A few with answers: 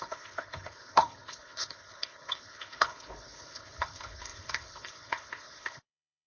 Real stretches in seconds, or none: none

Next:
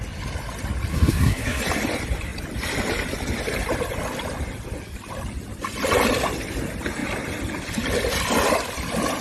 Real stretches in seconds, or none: 0.0-0.9; 1.6-9.2

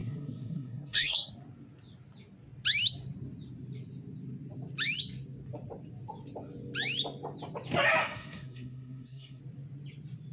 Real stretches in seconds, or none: 1.3-8.0; 9.4-10.3

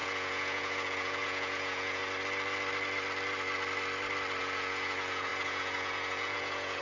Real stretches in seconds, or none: 2.0-4.4

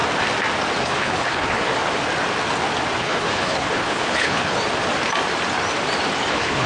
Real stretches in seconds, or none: 0.0-0.8; 1.7-3.0; 4.6-6.3

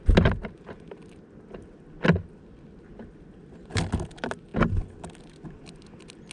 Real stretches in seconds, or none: 0.0-6.3